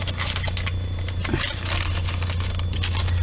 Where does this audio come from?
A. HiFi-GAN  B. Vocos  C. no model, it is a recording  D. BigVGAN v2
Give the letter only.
D